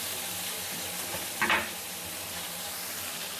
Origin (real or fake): real